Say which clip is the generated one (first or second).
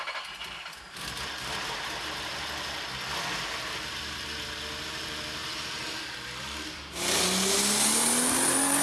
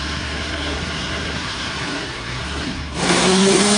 second